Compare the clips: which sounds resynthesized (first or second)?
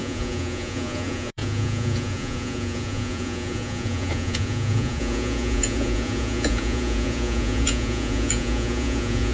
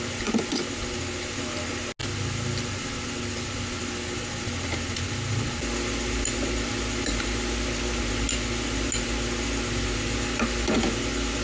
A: first